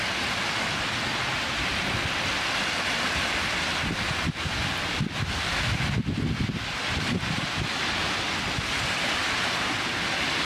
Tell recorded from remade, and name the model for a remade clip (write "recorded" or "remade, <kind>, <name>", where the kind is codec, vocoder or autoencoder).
recorded